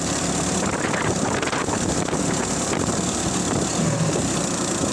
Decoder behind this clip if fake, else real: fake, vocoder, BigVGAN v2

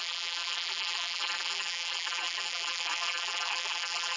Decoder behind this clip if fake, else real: fake, vocoder, BigVGAN v2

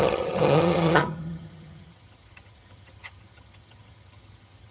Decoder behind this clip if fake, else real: fake, vocoder, HiFi-GAN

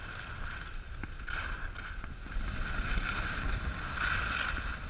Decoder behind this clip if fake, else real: real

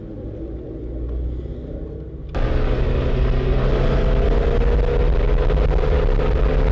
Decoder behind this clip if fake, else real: real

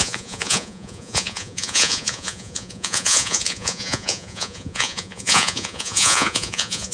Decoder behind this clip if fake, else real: fake, vocoder, Vocos